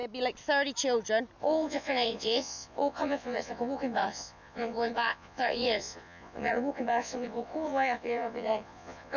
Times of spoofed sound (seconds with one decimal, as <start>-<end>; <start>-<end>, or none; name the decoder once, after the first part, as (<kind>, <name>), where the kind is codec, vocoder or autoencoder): 1.4-9.2 (vocoder, Vocos)